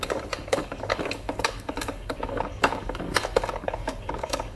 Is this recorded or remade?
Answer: remade